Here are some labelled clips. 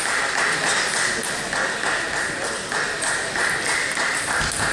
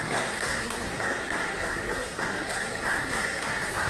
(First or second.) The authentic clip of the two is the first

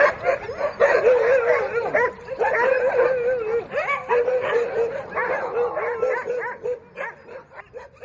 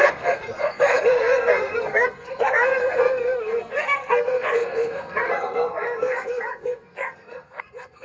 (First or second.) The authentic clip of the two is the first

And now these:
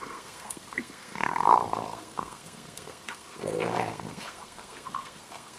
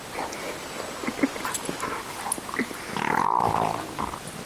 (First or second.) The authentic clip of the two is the second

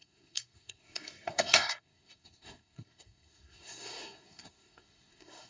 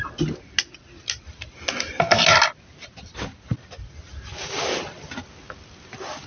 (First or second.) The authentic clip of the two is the second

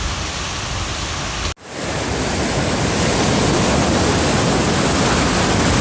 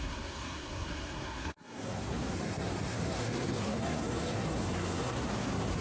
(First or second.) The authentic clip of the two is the first